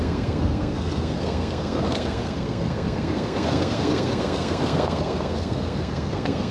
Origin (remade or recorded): remade